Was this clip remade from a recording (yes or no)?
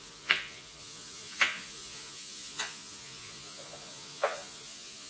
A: yes